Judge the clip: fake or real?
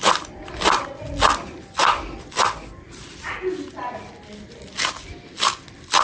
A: real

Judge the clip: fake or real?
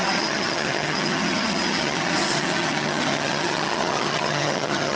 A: fake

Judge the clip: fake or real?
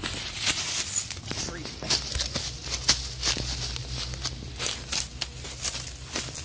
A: real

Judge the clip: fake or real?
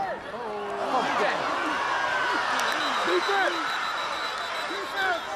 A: real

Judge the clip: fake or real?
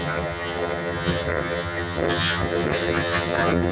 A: fake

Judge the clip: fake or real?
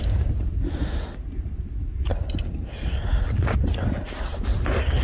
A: real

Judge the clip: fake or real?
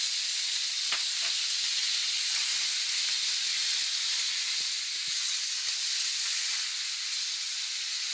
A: real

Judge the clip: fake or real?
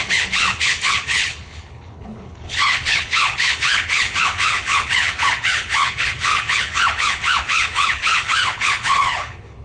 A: fake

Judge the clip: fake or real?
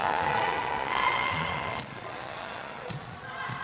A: fake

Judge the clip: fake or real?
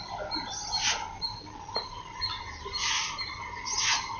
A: real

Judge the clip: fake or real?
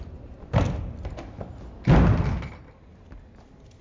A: real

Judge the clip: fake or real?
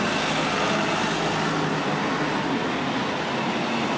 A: real